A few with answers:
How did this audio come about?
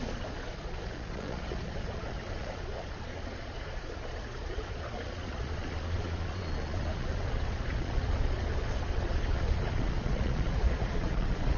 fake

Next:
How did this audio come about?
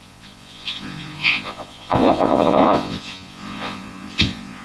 fake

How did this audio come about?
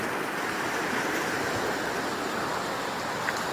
real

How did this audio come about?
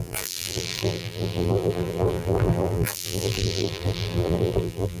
fake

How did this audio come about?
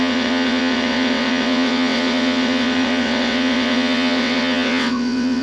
fake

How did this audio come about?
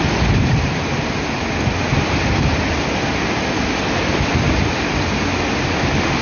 real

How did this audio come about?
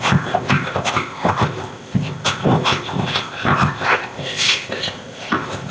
fake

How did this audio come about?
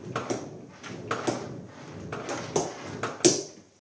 real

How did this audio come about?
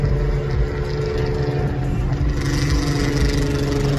real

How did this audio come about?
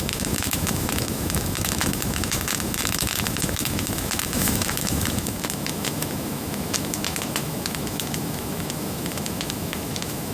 fake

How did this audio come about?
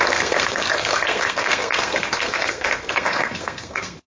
fake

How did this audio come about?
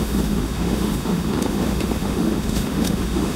fake